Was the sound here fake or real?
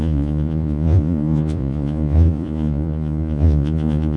fake